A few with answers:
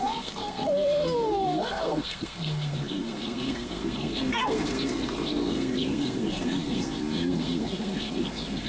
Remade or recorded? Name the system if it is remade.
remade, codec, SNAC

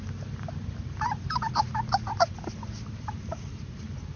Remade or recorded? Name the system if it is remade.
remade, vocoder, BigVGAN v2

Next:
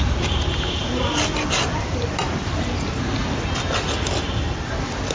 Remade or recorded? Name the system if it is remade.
recorded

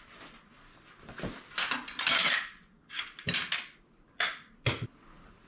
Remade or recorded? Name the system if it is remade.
recorded